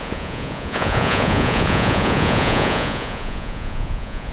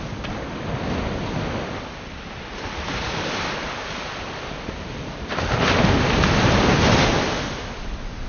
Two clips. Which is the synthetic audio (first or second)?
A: first